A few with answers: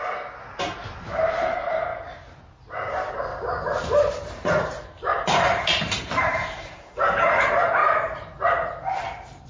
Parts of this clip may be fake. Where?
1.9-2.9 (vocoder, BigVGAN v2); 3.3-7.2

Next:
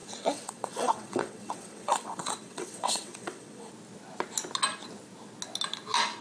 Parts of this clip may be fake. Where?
0.0-3.7 (vocoder, WaveNeXt)